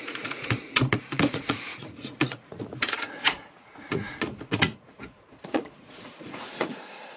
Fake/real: fake